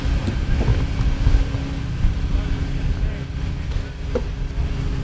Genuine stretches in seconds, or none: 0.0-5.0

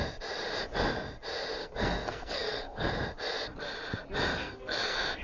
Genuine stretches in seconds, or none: 0.0-1.6; 2.9-4.4

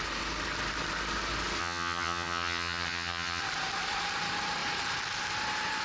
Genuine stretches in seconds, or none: 0.0-1.6; 3.4-5.8